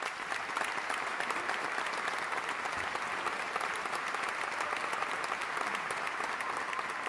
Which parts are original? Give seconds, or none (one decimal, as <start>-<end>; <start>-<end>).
1.1-1.7

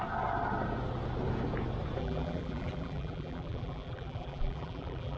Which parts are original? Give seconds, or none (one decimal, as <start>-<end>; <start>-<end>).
0.0-2.0

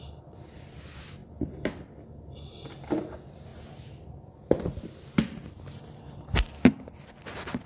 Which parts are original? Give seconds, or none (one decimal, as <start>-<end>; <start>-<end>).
0.0-1.2; 1.9-7.7

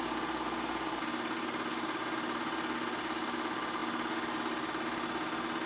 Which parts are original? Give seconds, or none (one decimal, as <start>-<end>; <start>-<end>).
0.0-5.7

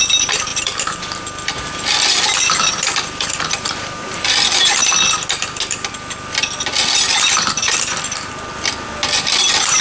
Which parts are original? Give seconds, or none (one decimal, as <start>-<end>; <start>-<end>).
0.0-0.5; 4.2-6.7; 8.3-9.8

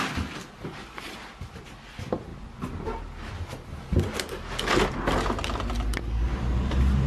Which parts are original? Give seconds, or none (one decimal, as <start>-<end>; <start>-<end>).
0.0-7.1